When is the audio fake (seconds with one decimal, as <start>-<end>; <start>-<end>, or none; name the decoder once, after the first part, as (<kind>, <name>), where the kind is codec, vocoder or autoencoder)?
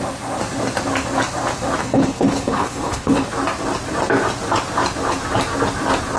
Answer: 1.8-3.3 (codec, HILCodec)